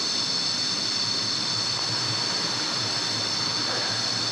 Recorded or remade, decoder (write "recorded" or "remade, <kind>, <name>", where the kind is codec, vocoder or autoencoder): recorded